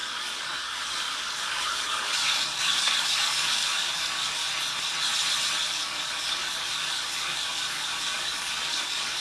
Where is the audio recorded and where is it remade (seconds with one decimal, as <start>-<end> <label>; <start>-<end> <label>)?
0.0-4.4 remade; 4.4-5.7 recorded; 5.7-9.2 remade